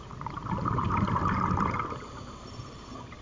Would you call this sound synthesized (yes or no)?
no